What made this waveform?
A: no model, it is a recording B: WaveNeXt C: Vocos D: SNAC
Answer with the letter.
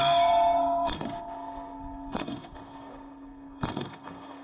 D